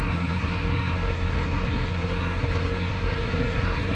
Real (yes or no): no